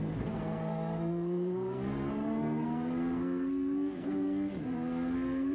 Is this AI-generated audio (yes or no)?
yes